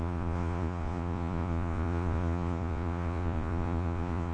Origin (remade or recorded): remade